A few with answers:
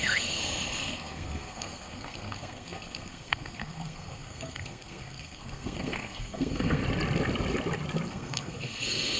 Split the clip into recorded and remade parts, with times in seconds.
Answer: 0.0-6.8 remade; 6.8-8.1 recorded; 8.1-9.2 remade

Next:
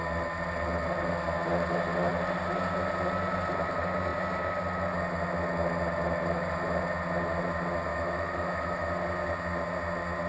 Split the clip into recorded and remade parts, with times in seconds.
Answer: 0.0-7.9 recorded; 7.9-8.9 remade; 8.9-10.3 recorded

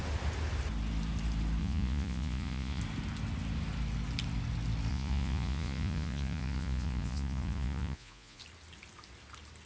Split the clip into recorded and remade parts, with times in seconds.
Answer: 0.0-1.6 recorded; 1.6-2.8 remade; 2.8-4.9 recorded; 4.9-8.4 remade; 8.4-9.7 recorded

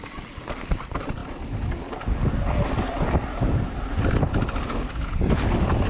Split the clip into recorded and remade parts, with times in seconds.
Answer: 0.0-5.9 recorded

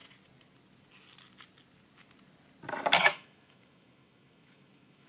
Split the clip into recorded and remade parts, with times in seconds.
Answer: 0.0-3.0 recorded; 3.0-5.1 remade

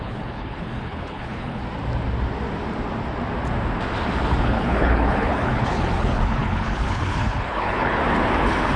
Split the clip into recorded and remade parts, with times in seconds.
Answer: 0.0-1.6 remade; 1.6-4.4 recorded; 4.4-8.0 remade; 8.0-8.8 recorded

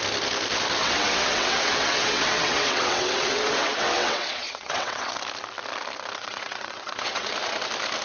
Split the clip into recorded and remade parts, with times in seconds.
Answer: 0.0-0.8 recorded; 0.8-5.1 remade; 5.1-6.2 recorded; 6.2-7.3 remade; 7.3-8.0 recorded